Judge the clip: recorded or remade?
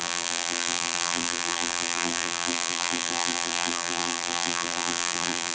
remade